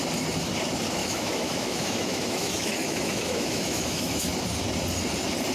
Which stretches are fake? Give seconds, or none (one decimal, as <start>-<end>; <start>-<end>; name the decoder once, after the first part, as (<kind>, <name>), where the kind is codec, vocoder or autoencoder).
1.0-4.3 (autoencoder, DAC-VAE)